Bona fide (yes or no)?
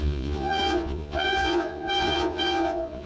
no